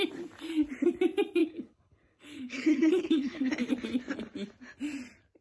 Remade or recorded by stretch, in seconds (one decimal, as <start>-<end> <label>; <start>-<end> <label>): 0.0-1.4 recorded; 1.4-3.5 remade; 3.5-5.4 recorded